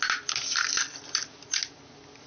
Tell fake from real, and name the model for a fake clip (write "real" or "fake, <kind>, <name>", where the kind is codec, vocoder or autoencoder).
real